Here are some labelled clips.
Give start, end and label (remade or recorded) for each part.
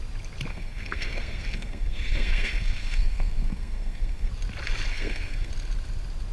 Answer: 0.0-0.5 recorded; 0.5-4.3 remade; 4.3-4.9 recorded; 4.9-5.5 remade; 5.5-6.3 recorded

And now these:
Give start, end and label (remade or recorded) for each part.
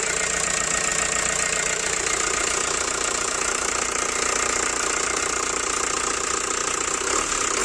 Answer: 0.0-7.6 recorded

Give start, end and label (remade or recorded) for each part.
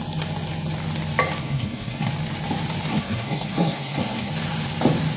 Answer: 0.0-1.4 recorded; 1.4-2.1 remade; 2.1-2.9 recorded; 2.9-4.3 remade; 4.3-5.2 recorded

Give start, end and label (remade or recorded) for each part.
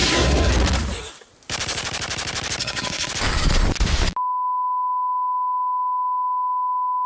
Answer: 0.0-0.5 remade; 0.5-2.6 recorded; 2.6-3.1 remade; 3.1-7.1 recorded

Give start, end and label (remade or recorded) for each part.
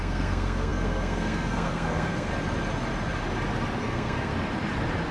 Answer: 0.0-2.3 remade; 2.3-3.8 recorded; 3.8-4.3 remade; 4.3-5.1 recorded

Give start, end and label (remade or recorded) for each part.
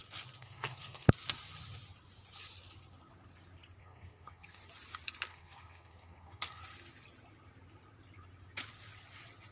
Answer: 0.0-0.4 recorded; 0.4-1.1 remade; 1.1-3.8 recorded; 3.8-4.6 remade; 4.6-5.3 recorded; 5.3-6.6 remade; 6.6-9.5 recorded